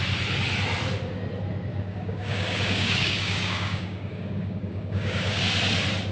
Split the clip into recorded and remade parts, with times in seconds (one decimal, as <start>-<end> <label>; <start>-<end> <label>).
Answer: 0.0-1.7 recorded; 1.7-5.4 remade; 5.4-6.1 recorded